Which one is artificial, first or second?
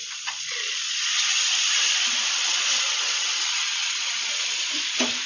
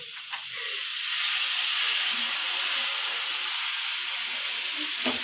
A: first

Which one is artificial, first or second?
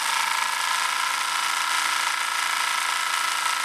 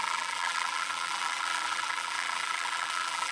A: second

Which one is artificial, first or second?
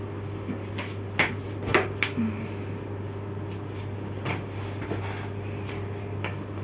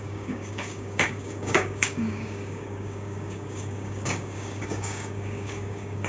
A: second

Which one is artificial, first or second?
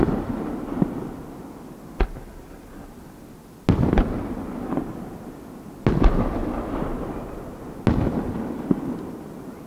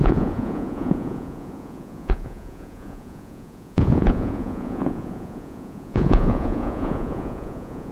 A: second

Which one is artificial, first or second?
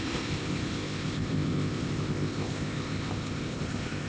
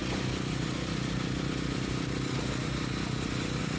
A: first